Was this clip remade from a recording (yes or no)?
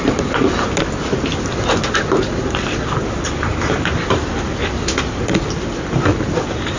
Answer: no